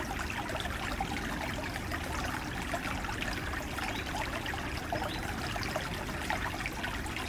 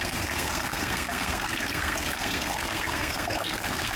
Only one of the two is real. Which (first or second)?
first